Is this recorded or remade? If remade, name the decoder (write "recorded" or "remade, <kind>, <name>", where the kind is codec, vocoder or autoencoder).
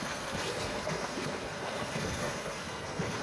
remade, codec, SNAC